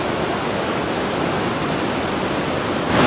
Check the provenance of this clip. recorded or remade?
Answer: recorded